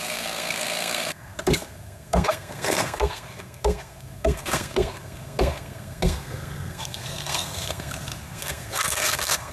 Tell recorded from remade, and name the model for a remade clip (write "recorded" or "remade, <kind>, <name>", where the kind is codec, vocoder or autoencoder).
remade, codec, SNAC